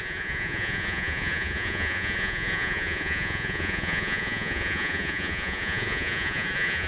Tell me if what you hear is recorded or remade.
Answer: remade